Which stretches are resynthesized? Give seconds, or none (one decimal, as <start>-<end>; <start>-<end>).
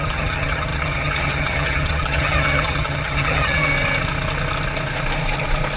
0.0-3.7